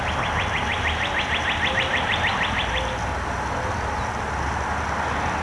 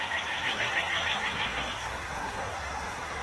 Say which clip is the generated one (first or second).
second